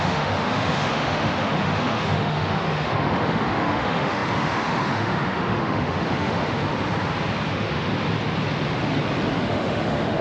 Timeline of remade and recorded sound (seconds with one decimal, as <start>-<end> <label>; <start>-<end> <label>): 0.0-6.7 remade; 6.7-7.5 recorded; 7.5-7.9 remade; 7.9-9.4 recorded; 9.4-10.2 remade